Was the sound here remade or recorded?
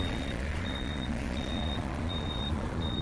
remade